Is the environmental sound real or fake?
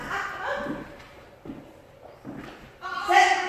real